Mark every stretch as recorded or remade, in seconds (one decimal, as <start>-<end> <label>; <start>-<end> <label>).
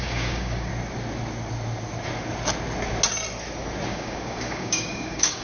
0.0-0.7 remade; 0.7-3.9 recorded; 3.9-5.4 remade